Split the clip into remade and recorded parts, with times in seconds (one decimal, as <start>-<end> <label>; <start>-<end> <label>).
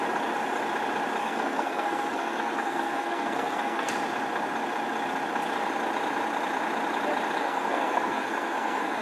0.0-1.2 recorded; 1.2-3.9 remade; 3.9-7.4 recorded; 7.4-9.0 remade